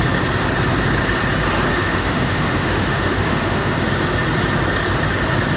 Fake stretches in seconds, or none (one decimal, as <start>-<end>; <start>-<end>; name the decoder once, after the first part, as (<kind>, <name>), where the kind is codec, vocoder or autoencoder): 1.7-3.7 (autoencoder, DAC-VAE)